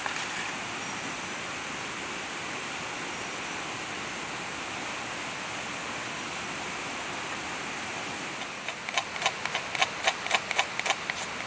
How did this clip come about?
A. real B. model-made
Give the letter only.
A